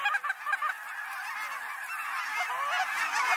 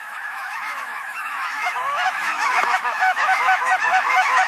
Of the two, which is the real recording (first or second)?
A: first